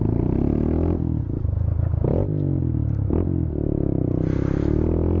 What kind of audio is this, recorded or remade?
recorded